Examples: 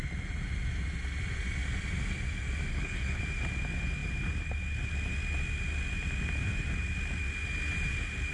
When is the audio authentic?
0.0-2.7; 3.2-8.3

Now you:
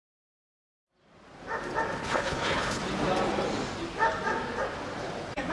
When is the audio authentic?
0.0-2.0; 2.8-5.5

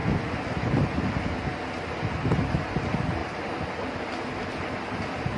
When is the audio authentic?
0.0-5.4